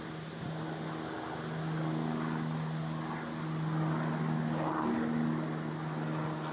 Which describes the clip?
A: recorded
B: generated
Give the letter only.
A